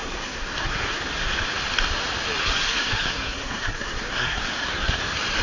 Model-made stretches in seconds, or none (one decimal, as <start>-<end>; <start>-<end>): 0.0-1.0; 2.4-5.0